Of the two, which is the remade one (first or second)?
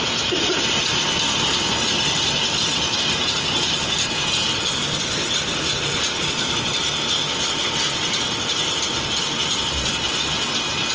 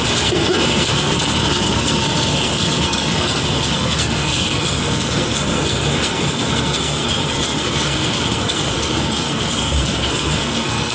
second